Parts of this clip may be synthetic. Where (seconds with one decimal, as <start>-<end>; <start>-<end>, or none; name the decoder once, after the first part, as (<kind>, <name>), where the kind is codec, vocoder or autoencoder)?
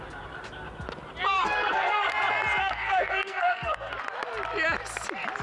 1.3-2.1 (codec, SNAC); 2.6-3.9